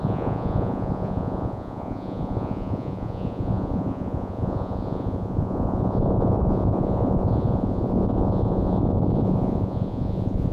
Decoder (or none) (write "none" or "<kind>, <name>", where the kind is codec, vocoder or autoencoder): vocoder, Vocos